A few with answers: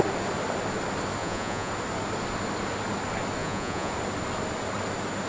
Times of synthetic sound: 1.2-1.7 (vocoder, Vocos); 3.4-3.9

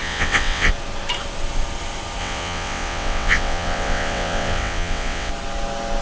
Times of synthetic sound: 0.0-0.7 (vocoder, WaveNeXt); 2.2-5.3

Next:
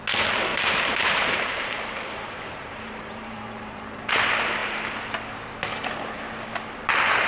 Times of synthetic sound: 0.5-4.1 (vocoder, BigVGAN v2)

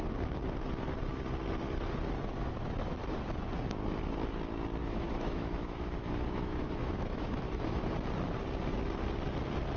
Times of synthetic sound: 4.8-7.9 (autoencoder, DAC-VAE)

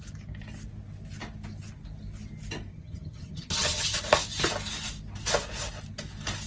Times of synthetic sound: 2.7-4.0 (vocoder, HiFi-GAN)

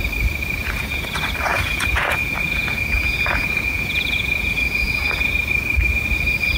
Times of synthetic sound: 0.6-1.1 (vocoder, Vocos); 1.5-5.3